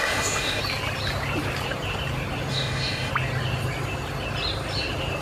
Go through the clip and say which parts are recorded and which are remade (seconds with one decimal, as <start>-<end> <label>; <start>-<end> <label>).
0.0-0.6 remade; 0.6-2.5 recorded; 2.5-3.1 remade; 3.1-5.2 recorded